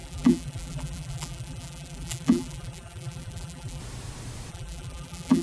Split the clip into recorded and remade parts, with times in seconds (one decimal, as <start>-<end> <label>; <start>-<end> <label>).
0.0-3.8 remade; 3.8-4.5 recorded; 4.5-5.4 remade